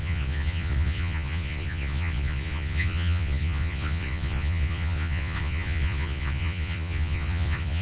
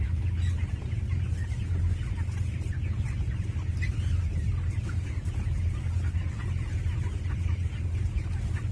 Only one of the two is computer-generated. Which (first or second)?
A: first